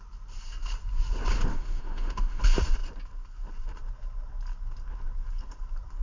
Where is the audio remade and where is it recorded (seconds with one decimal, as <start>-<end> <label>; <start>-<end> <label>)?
0.0-1.5 recorded; 1.5-2.4 remade; 2.4-6.0 recorded

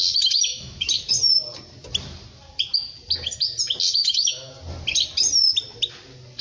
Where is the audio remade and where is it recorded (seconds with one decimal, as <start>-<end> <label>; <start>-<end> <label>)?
0.0-0.5 recorded; 0.5-1.1 remade; 1.1-4.0 recorded; 4.0-4.5 remade; 4.5-6.4 recorded

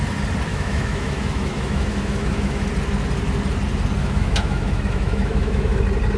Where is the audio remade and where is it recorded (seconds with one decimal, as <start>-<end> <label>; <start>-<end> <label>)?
0.0-0.5 recorded; 0.5-2.7 remade; 2.7-4.0 recorded; 4.0-5.8 remade; 5.8-6.2 recorded